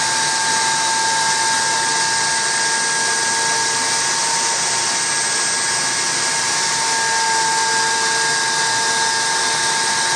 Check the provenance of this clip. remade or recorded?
recorded